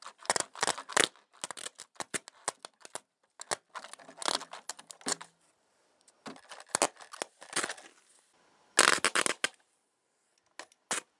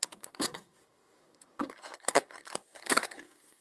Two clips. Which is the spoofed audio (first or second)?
second